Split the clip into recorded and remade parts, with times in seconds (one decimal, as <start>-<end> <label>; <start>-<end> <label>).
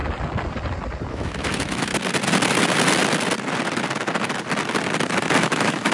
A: 0.0-1.1 recorded; 1.1-1.9 remade; 1.9-5.4 recorded; 5.4-5.9 remade